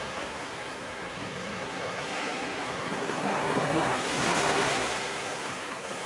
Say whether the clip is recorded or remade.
remade